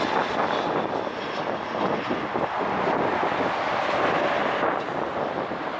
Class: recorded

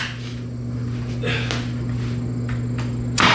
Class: recorded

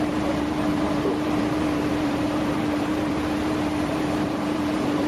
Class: remade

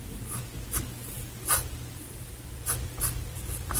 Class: recorded